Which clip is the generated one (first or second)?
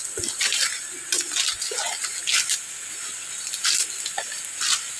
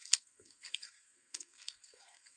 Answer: second